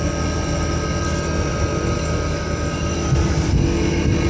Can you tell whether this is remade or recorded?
recorded